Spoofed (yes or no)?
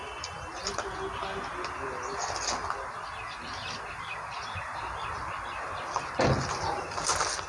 no